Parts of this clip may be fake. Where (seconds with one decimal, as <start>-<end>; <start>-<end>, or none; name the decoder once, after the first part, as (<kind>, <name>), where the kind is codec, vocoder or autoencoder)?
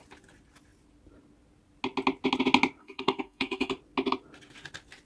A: 2.8-3.7 (codec, SNAC)